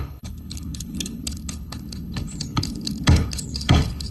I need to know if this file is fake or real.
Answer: fake